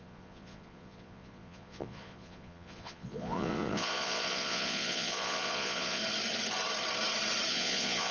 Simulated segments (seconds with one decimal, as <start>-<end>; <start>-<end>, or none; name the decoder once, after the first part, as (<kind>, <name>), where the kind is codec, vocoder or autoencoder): 0.0-6.0 (vocoder, Vocos); 7.5-8.1